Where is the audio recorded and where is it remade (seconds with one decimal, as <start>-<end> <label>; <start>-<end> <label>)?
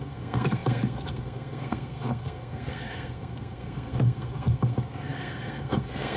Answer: 0.0-6.2 remade